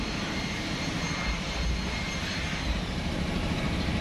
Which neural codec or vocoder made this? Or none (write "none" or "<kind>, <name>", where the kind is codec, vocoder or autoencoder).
vocoder, BigVGAN v2